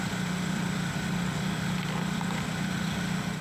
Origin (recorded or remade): remade